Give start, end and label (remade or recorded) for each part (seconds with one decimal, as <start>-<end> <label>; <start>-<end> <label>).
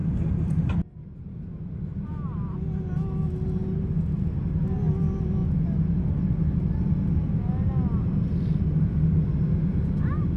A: 0.0-10.4 recorded